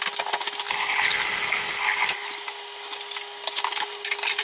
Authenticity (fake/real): real